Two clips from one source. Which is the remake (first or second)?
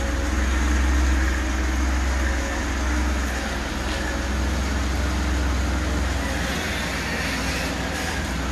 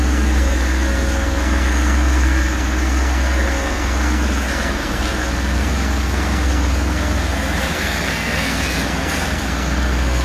second